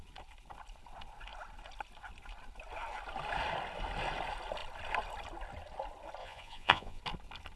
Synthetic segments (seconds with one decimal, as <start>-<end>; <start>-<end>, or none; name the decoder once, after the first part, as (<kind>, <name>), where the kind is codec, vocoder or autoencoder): 6.2-7.0 (vocoder, Vocos)